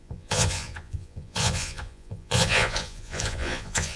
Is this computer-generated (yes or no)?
yes